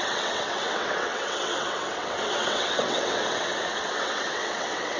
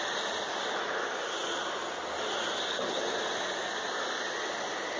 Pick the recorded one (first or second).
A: second